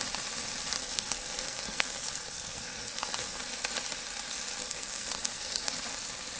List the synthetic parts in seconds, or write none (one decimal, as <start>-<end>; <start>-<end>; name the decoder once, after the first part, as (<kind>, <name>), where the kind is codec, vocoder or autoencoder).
0.8-3.4 (codec, SNAC); 4.6-5.7